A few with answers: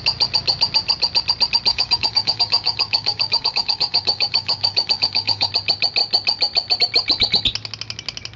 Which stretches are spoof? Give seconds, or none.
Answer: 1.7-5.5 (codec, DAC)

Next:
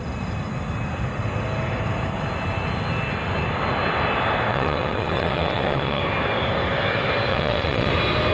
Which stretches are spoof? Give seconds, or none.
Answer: 4.5-6.0 (vocoder, WaveNeXt); 7.3-7.9

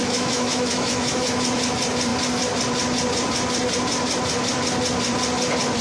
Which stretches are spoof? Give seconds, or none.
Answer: 0.0-1.3 (autoencoder, DAC-VAE)